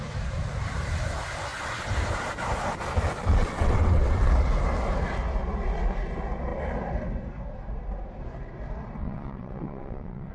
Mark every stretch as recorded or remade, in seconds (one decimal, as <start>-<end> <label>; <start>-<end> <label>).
0.0-3.4 recorded; 3.4-4.3 remade; 4.3-9.0 recorded; 9.0-10.3 remade